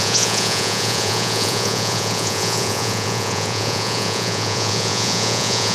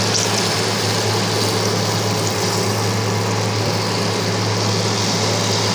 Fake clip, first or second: first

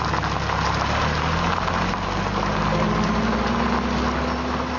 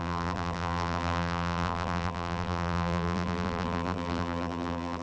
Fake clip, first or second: second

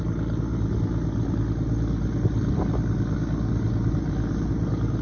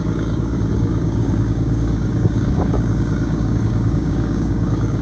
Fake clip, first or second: second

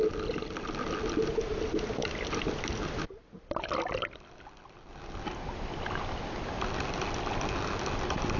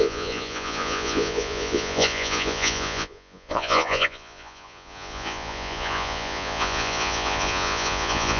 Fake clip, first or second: second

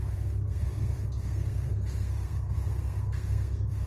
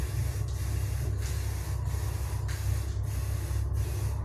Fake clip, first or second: first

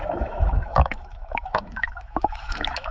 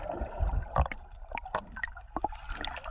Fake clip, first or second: first